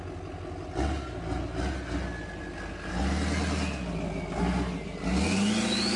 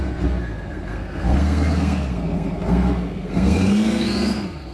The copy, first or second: second